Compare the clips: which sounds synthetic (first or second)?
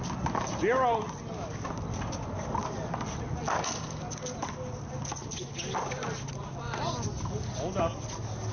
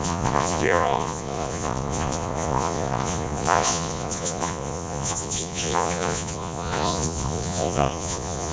second